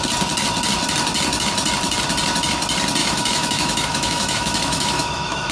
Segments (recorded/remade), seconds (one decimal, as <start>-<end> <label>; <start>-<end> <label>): 0.0-3.0 recorded; 3.0-5.5 remade